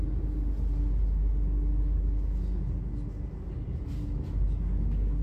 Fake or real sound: real